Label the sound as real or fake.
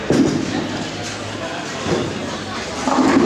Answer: real